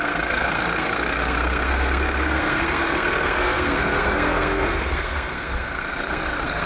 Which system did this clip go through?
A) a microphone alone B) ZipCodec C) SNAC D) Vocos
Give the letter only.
C